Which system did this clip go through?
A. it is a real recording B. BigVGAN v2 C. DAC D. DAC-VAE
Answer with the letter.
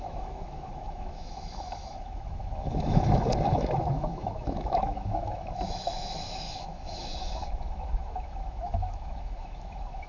D